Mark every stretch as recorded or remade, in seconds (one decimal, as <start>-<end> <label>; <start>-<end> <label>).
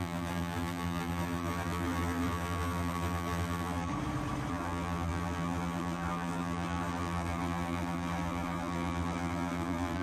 0.0-3.9 remade; 3.9-4.5 recorded; 4.5-10.0 remade